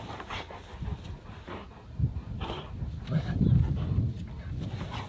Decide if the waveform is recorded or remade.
recorded